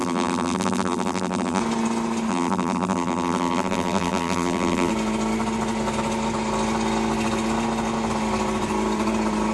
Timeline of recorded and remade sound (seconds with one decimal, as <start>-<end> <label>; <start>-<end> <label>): 0.0-1.6 remade; 1.6-2.3 recorded; 2.3-4.9 remade; 4.9-9.5 recorded